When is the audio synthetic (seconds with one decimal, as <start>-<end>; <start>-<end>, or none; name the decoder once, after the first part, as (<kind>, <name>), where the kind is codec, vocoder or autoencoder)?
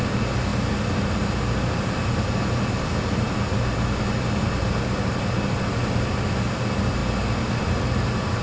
none